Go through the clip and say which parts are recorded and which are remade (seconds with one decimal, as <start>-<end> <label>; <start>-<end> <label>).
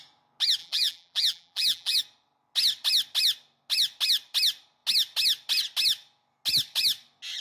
0.0-0.6 recorded; 0.6-2.0 remade; 2.0-7.4 recorded